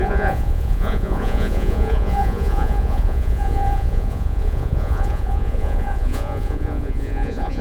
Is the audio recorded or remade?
remade